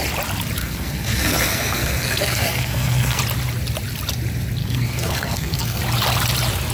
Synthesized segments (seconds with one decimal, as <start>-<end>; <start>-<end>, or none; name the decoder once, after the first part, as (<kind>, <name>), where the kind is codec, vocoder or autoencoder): 0.6-3.2 (codec, SNAC); 4.6-5.8